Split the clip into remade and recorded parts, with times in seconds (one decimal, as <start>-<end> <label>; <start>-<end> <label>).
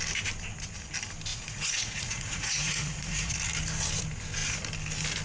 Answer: 0.0-1.3 recorded; 1.3-3.3 remade; 3.3-5.2 recorded